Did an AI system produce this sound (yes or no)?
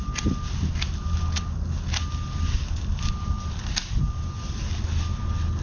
no